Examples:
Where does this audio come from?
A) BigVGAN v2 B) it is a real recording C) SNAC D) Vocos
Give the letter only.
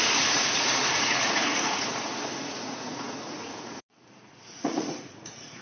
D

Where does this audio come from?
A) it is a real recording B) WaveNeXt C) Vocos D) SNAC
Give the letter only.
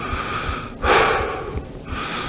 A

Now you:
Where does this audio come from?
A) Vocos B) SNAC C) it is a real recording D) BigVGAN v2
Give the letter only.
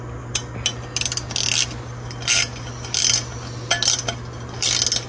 C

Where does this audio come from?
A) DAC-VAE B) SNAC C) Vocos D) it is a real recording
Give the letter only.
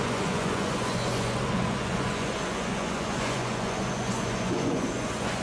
C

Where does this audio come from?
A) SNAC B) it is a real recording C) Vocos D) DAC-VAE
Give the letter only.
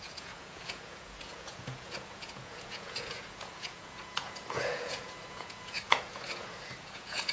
C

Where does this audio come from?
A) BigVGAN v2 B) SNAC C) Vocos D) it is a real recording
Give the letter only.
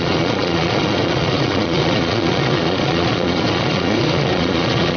C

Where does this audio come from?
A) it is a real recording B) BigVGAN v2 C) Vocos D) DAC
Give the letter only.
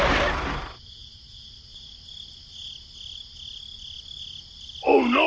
A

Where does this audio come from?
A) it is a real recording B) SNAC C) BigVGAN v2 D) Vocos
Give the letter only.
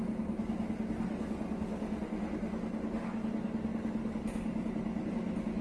A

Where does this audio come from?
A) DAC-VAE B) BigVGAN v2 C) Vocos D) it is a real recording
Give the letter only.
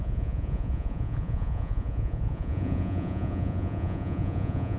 C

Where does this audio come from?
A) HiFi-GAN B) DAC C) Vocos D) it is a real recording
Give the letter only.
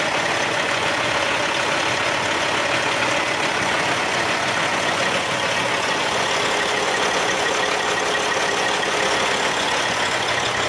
C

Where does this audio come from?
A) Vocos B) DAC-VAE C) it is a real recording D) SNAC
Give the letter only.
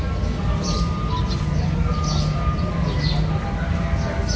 C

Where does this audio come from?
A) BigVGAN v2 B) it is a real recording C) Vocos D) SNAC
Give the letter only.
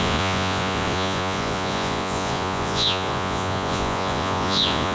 C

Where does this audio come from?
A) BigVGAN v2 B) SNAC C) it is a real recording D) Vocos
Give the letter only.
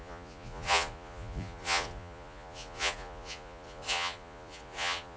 D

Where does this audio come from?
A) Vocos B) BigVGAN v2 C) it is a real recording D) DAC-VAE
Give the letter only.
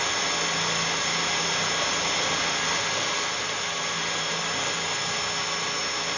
C